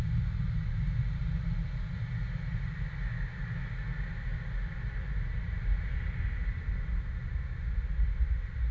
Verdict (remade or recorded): recorded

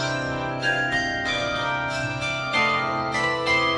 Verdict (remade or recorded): remade